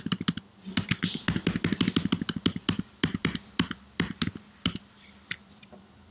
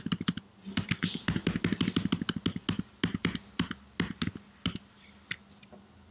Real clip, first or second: second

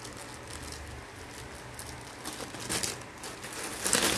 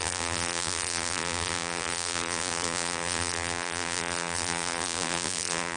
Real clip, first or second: first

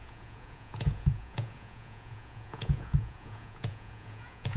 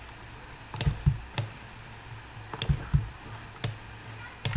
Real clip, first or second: second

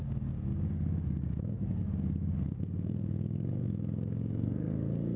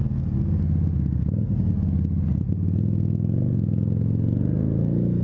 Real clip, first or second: second